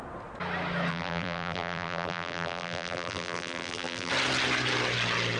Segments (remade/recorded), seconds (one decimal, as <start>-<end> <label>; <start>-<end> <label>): 0.0-0.9 recorded; 0.9-4.1 remade; 4.1-5.4 recorded